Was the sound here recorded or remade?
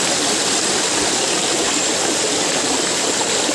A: recorded